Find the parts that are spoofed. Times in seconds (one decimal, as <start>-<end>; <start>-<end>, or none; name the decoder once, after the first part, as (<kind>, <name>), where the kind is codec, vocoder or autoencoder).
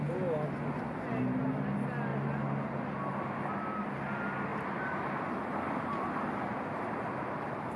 4.5-6.3 (vocoder, BigVGAN v2)